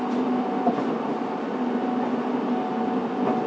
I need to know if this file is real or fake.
real